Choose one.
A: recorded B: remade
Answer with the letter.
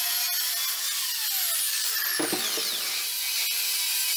A